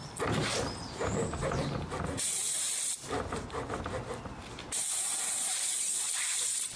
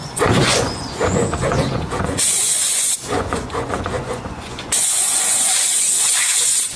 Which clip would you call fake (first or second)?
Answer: second